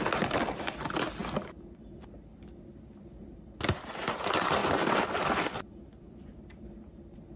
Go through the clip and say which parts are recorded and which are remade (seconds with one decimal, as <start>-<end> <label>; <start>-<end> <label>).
0.0-7.4 recorded